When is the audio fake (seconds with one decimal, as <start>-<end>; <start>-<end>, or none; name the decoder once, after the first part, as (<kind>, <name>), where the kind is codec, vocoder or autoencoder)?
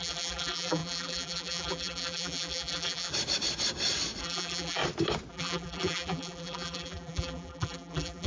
0.0-3.1 (vocoder, BigVGAN v2); 4.2-4.8; 5.3-8.3